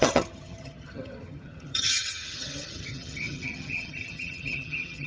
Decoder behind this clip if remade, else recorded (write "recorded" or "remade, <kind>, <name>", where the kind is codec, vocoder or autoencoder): remade, vocoder, HiFi-GAN